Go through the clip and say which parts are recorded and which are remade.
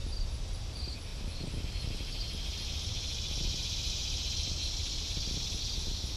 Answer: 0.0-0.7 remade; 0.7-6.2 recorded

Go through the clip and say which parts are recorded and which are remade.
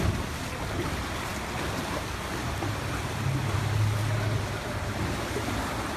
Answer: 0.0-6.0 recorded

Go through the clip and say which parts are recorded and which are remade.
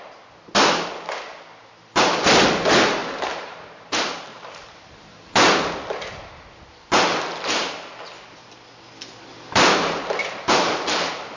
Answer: 0.0-3.0 recorded; 3.0-5.3 remade; 5.3-9.3 recorded; 9.3-10.7 remade; 10.7-11.4 recorded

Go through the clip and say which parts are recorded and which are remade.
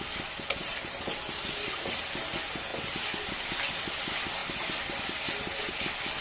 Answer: 0.0-0.6 recorded; 0.6-1.4 remade; 1.4-4.4 recorded; 4.4-5.7 remade; 5.7-6.2 recorded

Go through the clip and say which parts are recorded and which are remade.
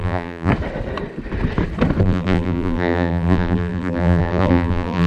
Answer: 0.0-0.5 remade; 0.5-2.0 recorded; 2.0-5.1 remade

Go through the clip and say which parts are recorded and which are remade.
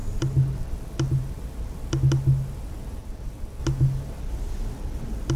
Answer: 0.0-1.2 remade; 1.2-3.0 recorded; 3.0-3.6 remade; 3.6-5.4 recorded